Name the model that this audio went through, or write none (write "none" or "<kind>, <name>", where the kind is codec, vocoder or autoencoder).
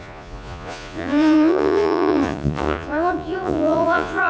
vocoder, Vocos